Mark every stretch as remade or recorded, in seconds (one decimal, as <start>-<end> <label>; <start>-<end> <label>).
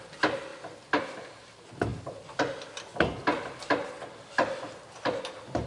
0.0-5.7 recorded